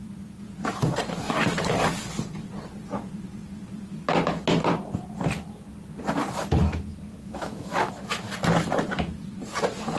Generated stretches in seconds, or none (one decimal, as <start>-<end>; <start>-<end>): 7.2-7.9